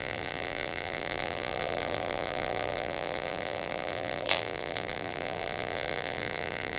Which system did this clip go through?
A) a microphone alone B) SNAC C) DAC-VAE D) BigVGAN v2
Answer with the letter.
D